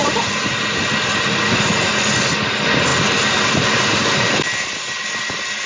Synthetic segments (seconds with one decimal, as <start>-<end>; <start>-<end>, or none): none